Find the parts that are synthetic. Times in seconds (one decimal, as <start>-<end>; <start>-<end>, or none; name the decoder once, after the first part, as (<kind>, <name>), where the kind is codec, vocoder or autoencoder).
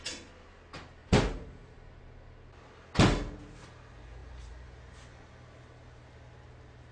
1.0-2.0 (vocoder, BigVGAN v2); 4.2-4.8